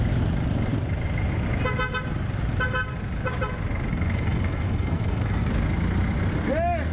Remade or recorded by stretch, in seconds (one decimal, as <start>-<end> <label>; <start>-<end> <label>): 0.0-3.9 recorded; 3.9-5.5 remade; 5.5-6.9 recorded